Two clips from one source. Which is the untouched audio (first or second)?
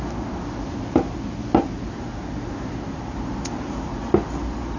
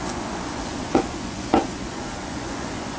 first